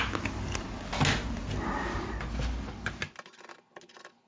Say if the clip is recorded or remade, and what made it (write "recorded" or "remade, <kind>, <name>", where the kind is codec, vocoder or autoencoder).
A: recorded